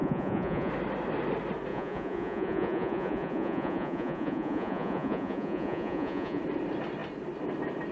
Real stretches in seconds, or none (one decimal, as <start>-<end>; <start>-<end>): 0.7-1.7; 6.4-7.9